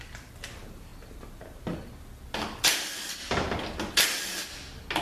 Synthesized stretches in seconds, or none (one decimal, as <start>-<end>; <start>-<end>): none